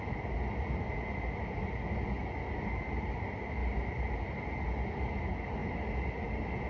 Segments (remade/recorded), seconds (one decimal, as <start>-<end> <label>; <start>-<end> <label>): 0.0-6.7 recorded

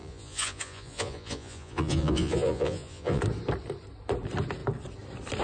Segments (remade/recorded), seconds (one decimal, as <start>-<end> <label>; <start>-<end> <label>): 0.0-3.2 remade; 3.2-5.4 recorded

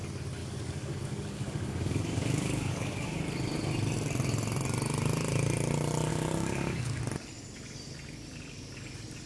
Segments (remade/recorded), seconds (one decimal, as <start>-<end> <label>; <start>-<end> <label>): 0.0-0.4 recorded; 0.4-3.2 remade; 3.2-6.1 recorded; 6.1-7.0 remade; 7.0-9.3 recorded

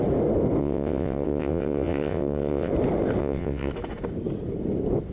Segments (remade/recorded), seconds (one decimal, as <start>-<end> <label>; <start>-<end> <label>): 0.0-0.6 recorded; 0.6-2.7 remade; 2.7-3.2 recorded; 3.2-3.7 remade; 3.7-5.1 recorded

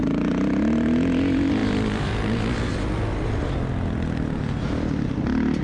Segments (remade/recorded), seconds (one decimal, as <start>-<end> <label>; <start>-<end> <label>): 0.0-5.6 recorded

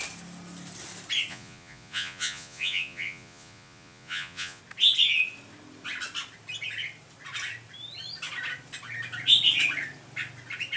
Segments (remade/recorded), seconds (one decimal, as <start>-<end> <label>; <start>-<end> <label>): 0.0-1.3 recorded; 1.3-4.6 remade; 4.6-10.8 recorded

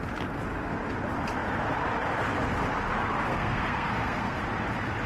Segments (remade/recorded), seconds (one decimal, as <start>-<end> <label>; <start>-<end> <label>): 0.0-3.3 recorded; 3.3-4.4 remade; 4.4-5.1 recorded

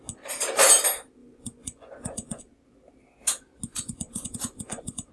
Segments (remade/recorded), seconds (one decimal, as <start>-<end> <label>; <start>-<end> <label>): 0.0-1.2 recorded; 1.2-2.4 remade; 2.4-3.7 recorded; 3.7-5.1 remade